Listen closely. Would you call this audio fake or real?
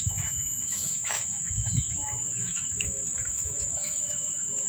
fake